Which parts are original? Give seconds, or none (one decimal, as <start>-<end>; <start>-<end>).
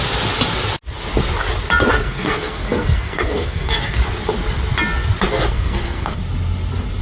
0.0-1.9; 4.0-5.3; 6.2-7.0